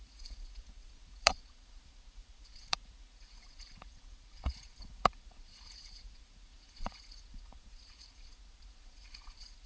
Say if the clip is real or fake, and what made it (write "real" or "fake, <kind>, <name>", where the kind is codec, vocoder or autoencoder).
fake, vocoder, Vocos